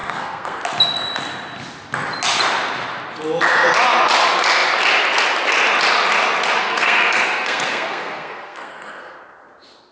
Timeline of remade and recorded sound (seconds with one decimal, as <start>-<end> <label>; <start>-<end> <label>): 0.0-0.6 remade; 0.6-6.6 recorded; 6.6-9.2 remade; 9.2-9.9 recorded